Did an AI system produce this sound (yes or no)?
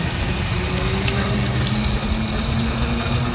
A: no